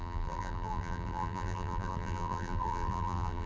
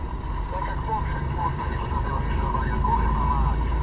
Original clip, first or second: second